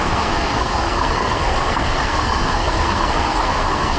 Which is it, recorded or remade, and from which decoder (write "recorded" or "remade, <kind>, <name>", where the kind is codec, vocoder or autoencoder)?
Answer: remade, codec, SNAC